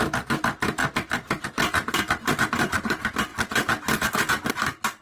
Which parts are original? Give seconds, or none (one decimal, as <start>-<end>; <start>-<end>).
0.0-5.0